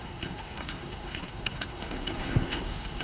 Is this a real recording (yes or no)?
no